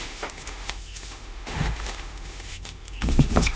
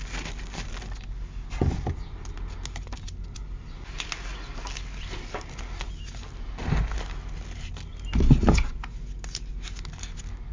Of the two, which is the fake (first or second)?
first